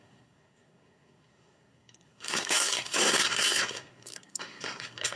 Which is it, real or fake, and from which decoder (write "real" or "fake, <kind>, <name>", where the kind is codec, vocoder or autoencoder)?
fake, codec, SNAC